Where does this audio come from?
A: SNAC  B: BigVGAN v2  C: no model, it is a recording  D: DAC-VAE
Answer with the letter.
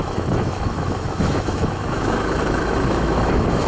D